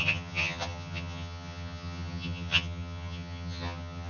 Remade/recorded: remade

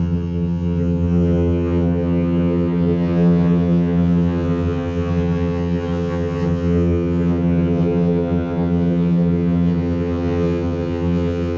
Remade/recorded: remade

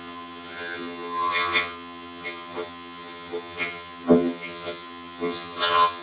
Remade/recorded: remade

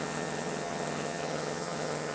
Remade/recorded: remade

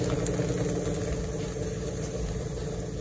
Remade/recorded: recorded